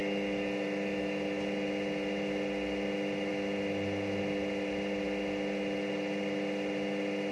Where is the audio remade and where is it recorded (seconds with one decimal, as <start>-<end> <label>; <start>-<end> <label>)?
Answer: 0.0-7.3 recorded